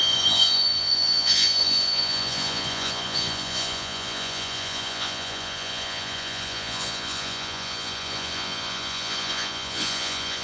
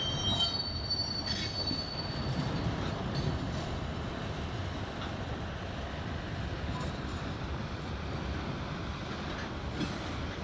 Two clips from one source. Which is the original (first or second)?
second